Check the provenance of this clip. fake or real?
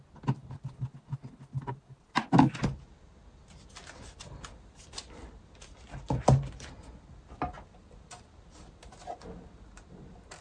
real